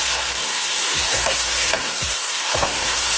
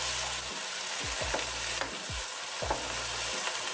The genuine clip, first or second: second